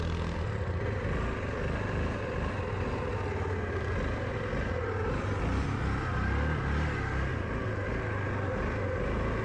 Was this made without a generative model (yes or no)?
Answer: yes